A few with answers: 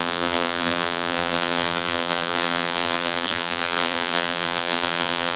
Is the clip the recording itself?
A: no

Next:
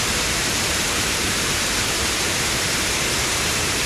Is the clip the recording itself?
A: no